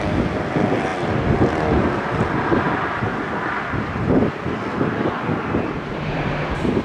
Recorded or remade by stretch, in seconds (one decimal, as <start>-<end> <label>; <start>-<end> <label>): 0.0-0.9 remade; 0.9-1.5 recorded; 1.5-3.1 remade; 3.1-5.9 recorded; 5.9-6.8 remade